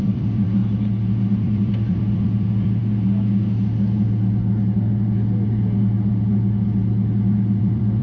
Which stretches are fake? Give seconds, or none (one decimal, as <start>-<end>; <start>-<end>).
0.0-0.6; 1.2-2.8; 7.6-8.0